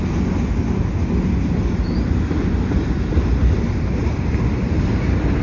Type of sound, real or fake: real